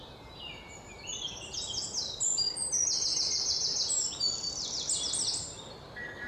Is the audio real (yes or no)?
yes